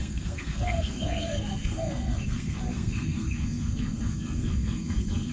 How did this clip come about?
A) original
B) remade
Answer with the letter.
B